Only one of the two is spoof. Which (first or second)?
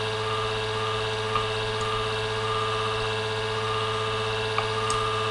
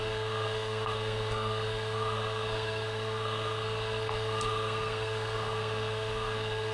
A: second